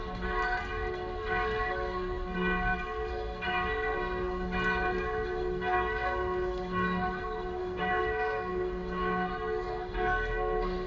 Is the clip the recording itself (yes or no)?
no